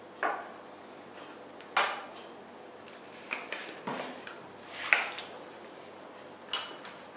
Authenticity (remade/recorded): recorded